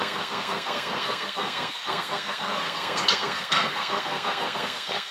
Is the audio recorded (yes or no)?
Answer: no